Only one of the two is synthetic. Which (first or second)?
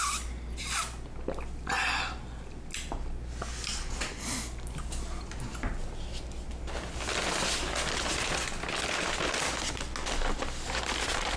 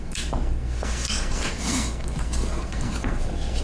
second